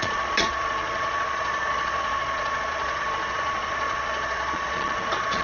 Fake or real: fake